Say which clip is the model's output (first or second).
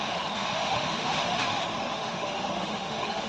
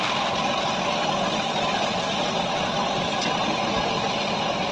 first